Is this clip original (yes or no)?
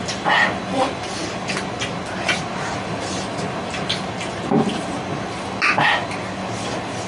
yes